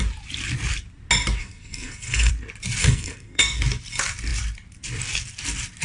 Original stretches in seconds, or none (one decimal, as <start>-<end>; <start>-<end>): 0.0-1.4; 2.3-2.8; 3.6-5.8